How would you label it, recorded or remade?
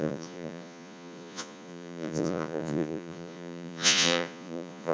remade